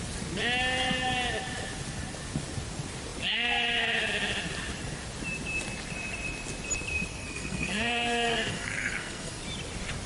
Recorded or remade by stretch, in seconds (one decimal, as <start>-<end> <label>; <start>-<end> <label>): 0.0-7.1 recorded; 7.1-9.4 remade; 9.4-10.1 recorded